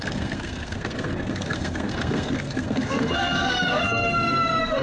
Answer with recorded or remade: remade